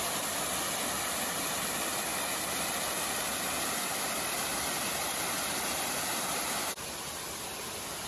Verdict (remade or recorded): recorded